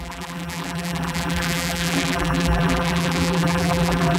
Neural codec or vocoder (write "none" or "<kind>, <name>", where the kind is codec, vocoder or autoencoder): vocoder, BigVGAN v2